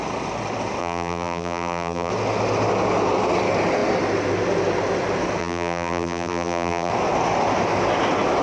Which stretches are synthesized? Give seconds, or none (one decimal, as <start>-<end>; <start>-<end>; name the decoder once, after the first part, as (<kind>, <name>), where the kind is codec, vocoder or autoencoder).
0.8-2.1 (vocoder, BigVGAN v2); 5.4-6.9